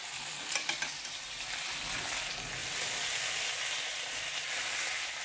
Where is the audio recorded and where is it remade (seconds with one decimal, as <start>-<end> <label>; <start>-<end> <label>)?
0.0-5.2 recorded